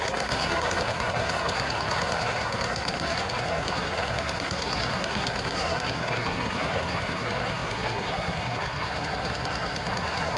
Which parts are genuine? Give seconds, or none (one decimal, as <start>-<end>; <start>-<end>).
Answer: none